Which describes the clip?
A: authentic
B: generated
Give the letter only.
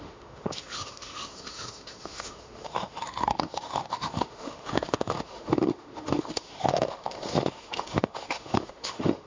B